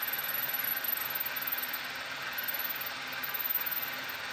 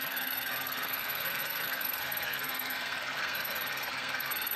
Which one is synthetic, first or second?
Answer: second